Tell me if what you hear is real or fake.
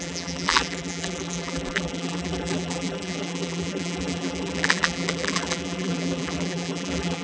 fake